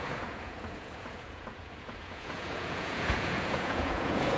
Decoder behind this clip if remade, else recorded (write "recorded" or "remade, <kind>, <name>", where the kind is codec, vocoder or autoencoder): remade, vocoder, Vocos